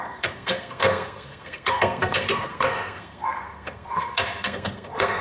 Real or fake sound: fake